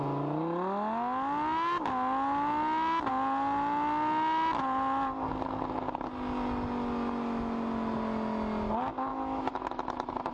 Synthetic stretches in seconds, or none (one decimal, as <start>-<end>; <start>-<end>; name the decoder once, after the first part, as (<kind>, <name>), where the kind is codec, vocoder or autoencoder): 9.1-10.3 (autoencoder, DAC-VAE)